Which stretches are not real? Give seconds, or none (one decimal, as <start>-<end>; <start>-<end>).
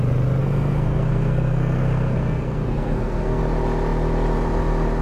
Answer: 0.4-3.4